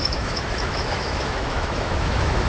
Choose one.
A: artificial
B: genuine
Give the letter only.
A